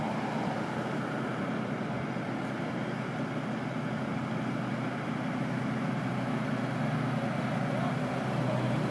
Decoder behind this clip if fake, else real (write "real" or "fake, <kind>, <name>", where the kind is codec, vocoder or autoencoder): real